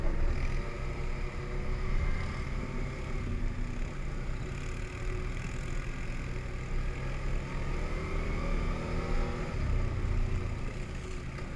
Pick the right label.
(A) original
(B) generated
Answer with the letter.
A